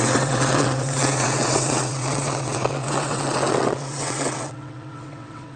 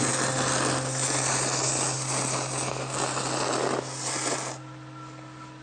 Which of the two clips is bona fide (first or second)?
second